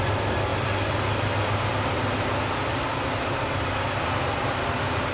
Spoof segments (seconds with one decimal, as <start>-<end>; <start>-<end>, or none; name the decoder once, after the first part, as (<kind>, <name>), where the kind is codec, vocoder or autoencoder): none